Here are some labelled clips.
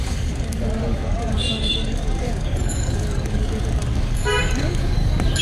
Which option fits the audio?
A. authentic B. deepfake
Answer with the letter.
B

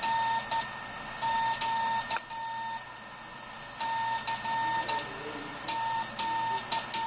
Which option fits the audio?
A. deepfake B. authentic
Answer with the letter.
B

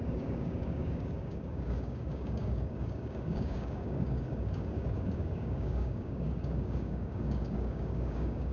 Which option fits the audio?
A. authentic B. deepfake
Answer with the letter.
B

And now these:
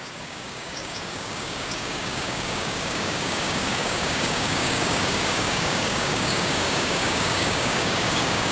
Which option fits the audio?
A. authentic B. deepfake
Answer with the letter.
B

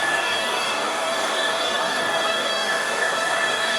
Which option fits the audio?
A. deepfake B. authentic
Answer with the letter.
A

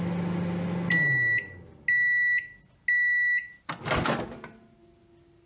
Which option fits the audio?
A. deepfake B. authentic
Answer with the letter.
B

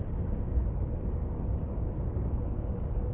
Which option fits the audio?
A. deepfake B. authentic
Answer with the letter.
A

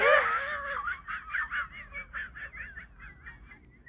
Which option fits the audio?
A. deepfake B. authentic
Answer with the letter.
B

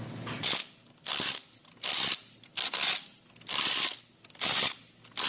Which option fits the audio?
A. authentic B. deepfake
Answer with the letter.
A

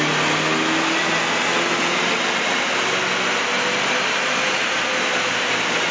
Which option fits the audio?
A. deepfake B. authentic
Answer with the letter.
B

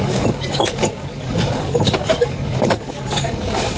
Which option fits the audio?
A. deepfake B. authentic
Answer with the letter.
A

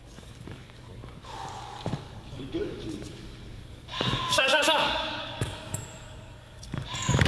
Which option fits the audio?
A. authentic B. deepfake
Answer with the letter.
B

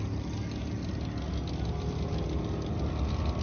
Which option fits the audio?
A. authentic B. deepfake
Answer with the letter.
A